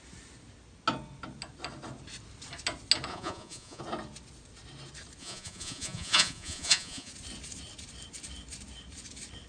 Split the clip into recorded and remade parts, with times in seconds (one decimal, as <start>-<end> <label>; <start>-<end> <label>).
0.0-3.1 recorded; 3.1-3.8 remade; 3.8-5.2 recorded; 5.2-7.1 remade; 7.1-9.5 recorded